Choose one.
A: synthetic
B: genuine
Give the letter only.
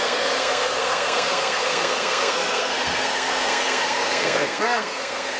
A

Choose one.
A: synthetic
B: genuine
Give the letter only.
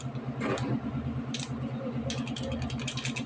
B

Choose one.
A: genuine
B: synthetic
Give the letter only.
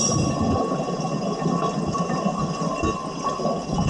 A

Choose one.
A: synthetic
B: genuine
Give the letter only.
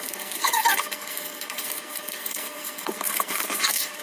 A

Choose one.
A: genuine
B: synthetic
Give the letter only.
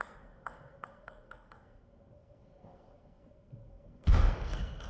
B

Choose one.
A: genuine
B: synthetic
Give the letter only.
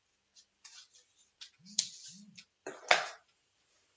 A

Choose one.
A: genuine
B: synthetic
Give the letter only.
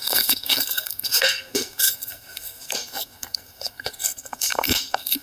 B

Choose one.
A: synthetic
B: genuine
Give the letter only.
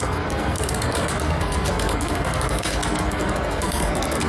A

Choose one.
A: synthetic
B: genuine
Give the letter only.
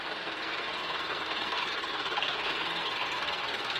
A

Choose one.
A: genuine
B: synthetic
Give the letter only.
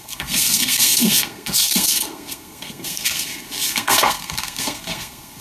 B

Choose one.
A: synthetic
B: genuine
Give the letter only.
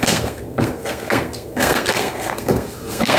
A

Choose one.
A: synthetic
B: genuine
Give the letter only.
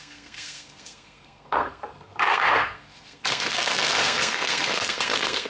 A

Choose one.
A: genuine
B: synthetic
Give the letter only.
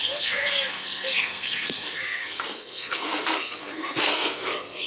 B